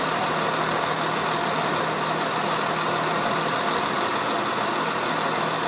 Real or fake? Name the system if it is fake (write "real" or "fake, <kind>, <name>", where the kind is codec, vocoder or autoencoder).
real